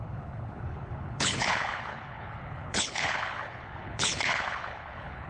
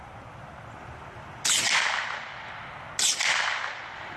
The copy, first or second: first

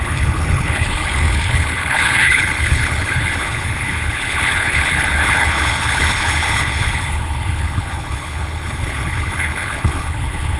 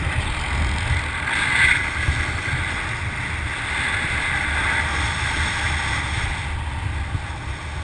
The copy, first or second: first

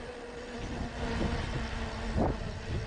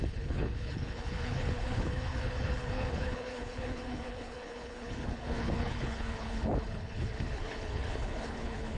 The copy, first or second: second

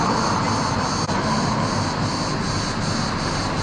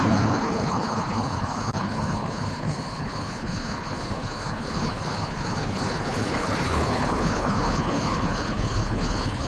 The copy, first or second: second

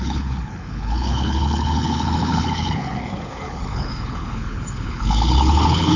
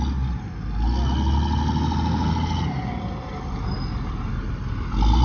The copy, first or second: first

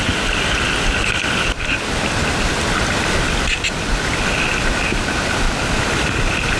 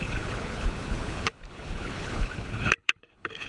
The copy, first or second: second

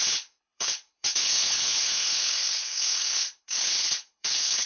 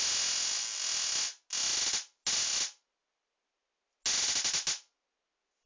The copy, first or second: first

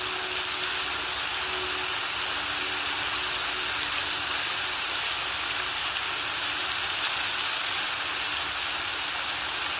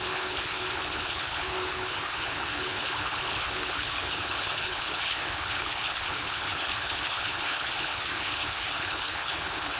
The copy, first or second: second